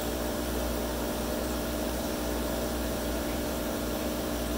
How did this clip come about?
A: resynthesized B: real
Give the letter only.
A